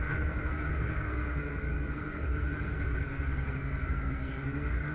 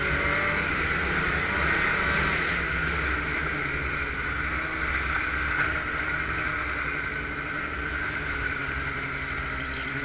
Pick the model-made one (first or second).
first